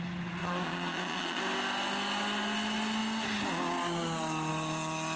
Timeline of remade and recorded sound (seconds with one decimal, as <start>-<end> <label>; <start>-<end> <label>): 0.0-0.4 recorded; 0.4-1.4 remade; 1.4-5.2 recorded